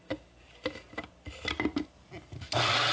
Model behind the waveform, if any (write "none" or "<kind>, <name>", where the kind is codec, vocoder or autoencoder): none